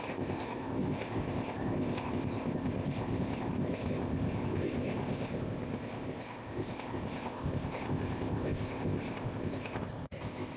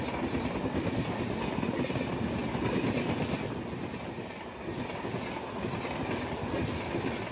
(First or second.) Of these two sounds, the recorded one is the second